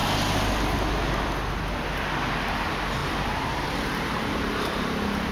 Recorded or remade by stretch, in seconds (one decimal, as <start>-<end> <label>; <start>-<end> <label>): 0.0-3.0 recorded; 3.0-4.3 remade; 4.3-5.3 recorded